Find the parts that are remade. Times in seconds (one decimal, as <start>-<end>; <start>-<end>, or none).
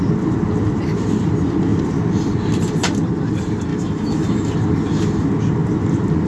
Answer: 3.7-4.5